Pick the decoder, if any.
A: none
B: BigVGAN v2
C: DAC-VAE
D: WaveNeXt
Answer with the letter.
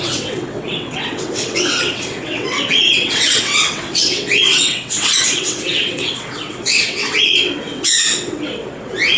D